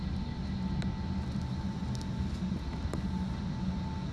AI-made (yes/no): no